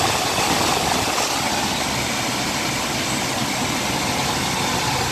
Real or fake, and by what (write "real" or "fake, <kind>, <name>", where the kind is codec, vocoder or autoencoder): real